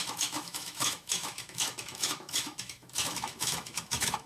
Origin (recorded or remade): remade